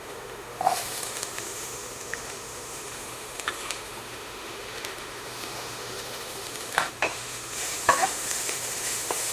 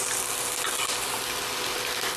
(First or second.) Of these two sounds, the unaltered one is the second